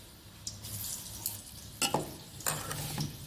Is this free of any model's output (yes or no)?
yes